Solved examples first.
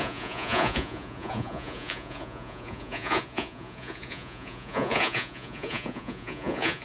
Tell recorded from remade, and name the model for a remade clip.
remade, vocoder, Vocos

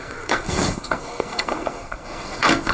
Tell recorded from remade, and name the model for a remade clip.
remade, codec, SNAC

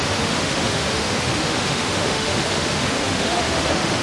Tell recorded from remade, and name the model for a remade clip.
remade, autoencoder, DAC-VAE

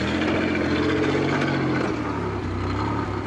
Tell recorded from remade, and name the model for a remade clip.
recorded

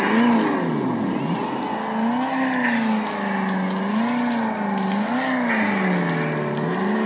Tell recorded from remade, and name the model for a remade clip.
recorded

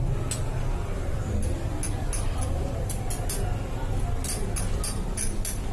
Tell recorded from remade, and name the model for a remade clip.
recorded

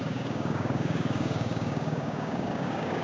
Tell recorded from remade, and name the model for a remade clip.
remade, codec, DAC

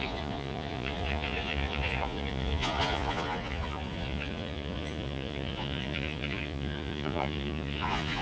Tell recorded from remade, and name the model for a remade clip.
remade, vocoder, Vocos